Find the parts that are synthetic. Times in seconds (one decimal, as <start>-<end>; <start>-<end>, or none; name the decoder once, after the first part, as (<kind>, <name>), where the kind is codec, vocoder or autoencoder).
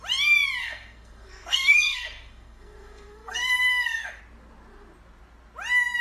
0.6-4.2 (codec, SNAC)